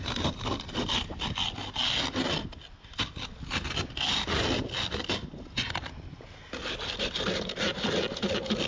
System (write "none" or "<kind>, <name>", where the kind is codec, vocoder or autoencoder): none